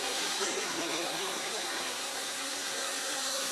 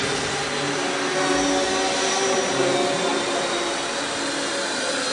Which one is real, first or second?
second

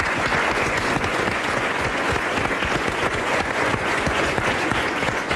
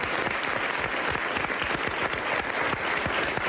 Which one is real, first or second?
second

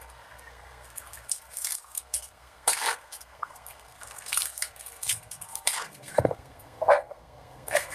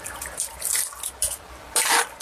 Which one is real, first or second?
second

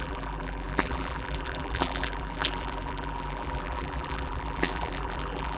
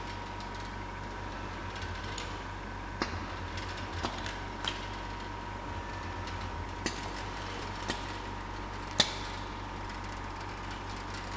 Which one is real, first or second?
second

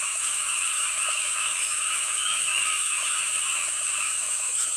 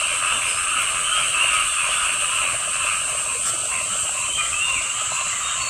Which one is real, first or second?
second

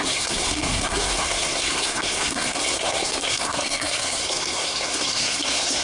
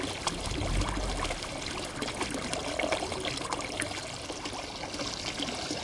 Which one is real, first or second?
second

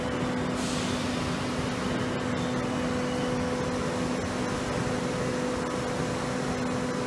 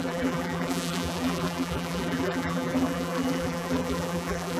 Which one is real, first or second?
first